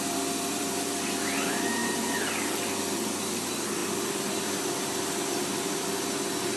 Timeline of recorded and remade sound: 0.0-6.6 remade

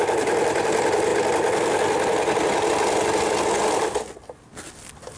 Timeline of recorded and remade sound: 0.0-1.1 remade; 1.1-4.2 recorded; 4.2-5.2 remade

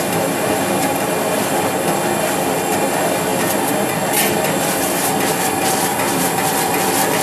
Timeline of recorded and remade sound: 0.0-5.9 recorded; 5.9-6.5 remade; 6.5-7.2 recorded

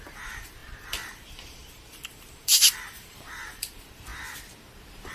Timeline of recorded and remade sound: 0.0-4.1 remade; 4.1-5.1 recorded

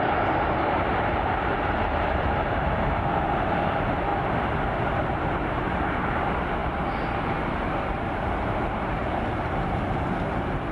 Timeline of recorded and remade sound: 0.0-4.1 remade; 4.1-5.5 recorded; 5.5-10.7 remade

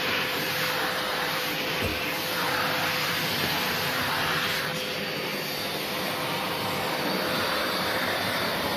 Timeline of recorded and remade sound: 0.0-1.9 remade; 1.9-2.4 recorded; 2.4-4.7 remade; 4.7-6.9 recorded; 6.9-8.8 remade